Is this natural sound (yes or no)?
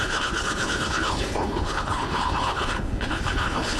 no